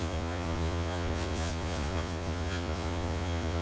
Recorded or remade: remade